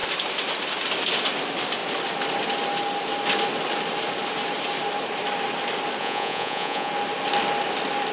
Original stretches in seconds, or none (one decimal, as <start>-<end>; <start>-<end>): 0.0-6.0; 6.9-8.1